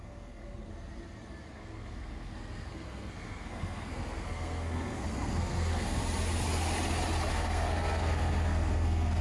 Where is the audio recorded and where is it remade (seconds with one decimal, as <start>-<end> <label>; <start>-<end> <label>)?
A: 0.0-0.7 remade; 0.7-1.5 recorded; 1.5-6.0 remade; 6.0-7.3 recorded; 7.3-9.2 remade